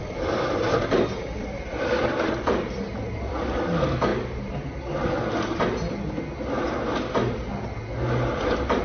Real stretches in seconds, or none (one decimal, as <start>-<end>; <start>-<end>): 4.1-8.8